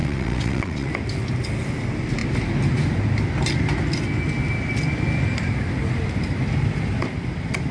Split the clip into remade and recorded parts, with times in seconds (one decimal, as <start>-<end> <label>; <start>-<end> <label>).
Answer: 0.0-0.9 remade; 0.9-7.7 recorded